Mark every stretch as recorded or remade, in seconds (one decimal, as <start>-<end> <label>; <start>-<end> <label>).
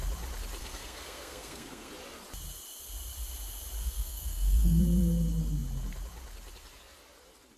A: 0.0-0.6 recorded; 0.6-1.9 remade; 1.9-3.8 recorded; 3.8-4.8 remade; 4.8-7.6 recorded